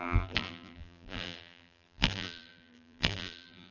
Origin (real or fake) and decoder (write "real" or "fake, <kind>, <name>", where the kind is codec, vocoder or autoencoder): fake, vocoder, BigVGAN v2